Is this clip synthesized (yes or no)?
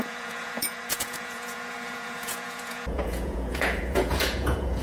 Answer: yes